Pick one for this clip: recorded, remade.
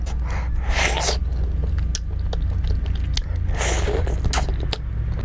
recorded